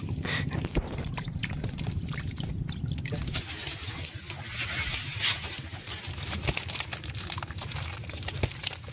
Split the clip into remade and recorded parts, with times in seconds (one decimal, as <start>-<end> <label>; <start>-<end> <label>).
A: 0.0-8.9 remade